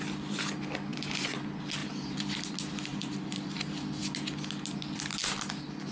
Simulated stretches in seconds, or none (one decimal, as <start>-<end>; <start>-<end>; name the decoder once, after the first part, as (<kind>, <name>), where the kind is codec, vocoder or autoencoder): 0.9-1.4 (vocoder, BigVGAN v2); 1.8-2.4; 2.9-3.6